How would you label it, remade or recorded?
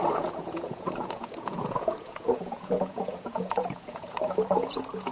remade